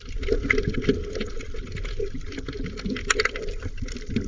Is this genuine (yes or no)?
yes